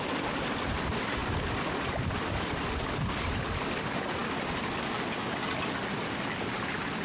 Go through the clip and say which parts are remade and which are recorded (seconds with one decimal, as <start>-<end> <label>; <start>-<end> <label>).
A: 0.0-7.0 recorded